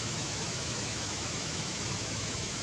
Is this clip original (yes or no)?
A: no